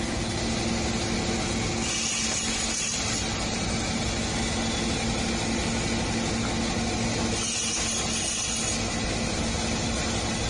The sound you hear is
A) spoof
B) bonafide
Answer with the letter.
B